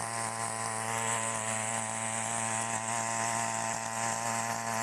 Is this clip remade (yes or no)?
no